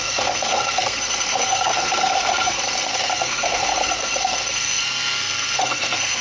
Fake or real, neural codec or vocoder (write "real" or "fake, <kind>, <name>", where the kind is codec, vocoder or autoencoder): fake, codec, SNAC